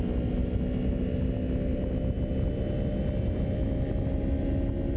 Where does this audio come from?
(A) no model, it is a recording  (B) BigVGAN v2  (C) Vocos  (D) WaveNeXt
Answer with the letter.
A